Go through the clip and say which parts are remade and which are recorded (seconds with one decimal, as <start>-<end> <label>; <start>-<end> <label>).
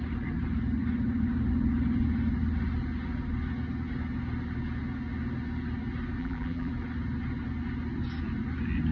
0.0-6.2 recorded; 6.2-6.7 remade; 6.7-8.9 recorded